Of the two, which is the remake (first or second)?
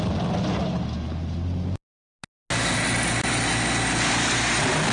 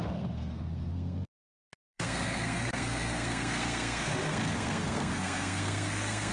second